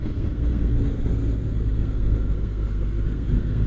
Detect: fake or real fake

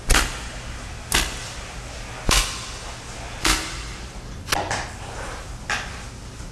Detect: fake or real real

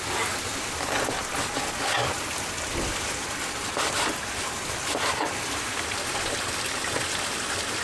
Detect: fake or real real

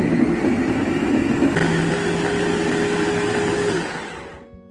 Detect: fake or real real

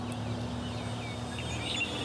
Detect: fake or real real